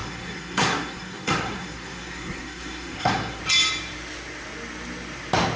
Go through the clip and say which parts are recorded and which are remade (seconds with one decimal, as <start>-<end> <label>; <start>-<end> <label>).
0.0-3.4 remade; 3.4-5.6 recorded